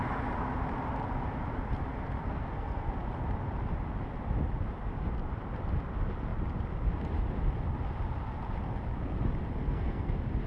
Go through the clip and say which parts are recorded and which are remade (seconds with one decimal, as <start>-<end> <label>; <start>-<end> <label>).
0.0-2.2 recorded; 2.2-2.8 remade; 2.8-9.6 recorded; 9.6-10.1 remade; 10.1-10.5 recorded